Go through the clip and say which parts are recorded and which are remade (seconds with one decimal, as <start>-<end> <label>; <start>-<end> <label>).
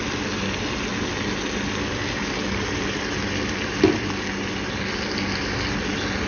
0.0-6.3 recorded